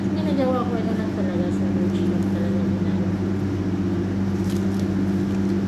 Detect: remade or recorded recorded